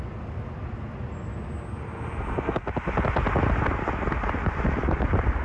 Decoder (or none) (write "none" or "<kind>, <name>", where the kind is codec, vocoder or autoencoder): none